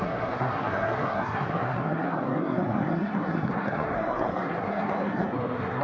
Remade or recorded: remade